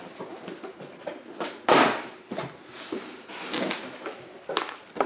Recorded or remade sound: recorded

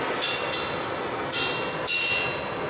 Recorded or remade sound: recorded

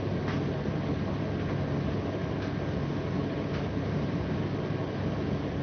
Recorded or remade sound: recorded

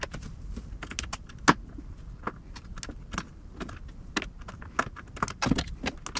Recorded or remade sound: recorded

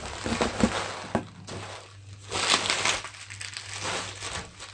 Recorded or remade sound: recorded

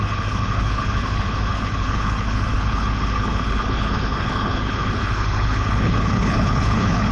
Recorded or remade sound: remade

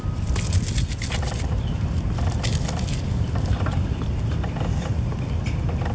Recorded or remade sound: recorded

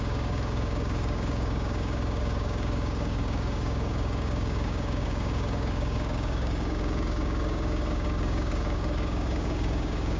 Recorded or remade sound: remade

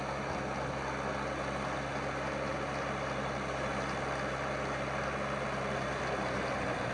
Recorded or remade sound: recorded